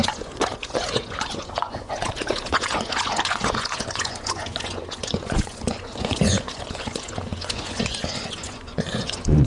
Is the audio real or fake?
fake